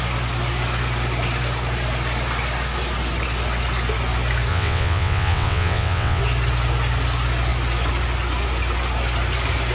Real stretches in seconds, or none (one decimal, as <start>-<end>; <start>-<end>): 0.0-4.5; 6.2-9.7